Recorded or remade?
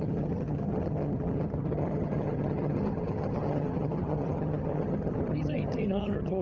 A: remade